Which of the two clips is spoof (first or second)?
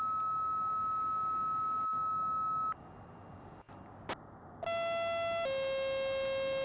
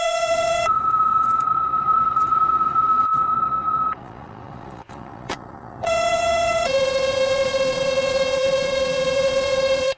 second